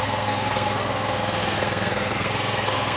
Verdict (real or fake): fake